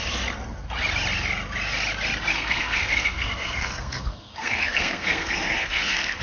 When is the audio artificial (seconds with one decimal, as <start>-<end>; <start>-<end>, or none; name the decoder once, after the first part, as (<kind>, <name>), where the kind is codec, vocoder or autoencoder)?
2.3-6.2 (codec, SNAC)